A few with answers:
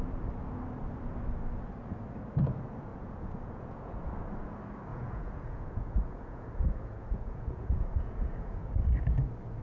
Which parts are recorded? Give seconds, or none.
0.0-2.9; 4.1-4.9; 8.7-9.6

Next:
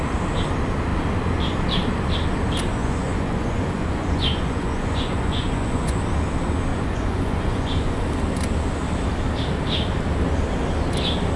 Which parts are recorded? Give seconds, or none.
0.0-2.8; 6.0-6.7; 8.0-11.4